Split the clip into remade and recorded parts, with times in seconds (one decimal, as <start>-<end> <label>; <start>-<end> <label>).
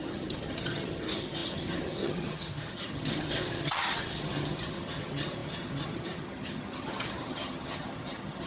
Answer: 0.0-8.5 remade